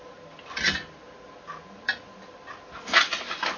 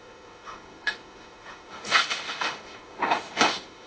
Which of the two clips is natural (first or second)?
first